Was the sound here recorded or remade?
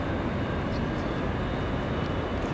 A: recorded